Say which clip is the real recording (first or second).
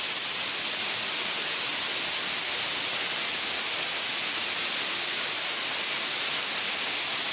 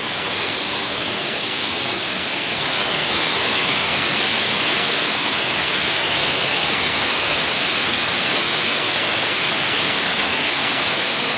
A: first